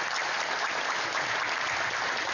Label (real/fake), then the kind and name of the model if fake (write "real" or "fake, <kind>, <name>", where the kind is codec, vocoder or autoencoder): fake, vocoder, BigVGAN v2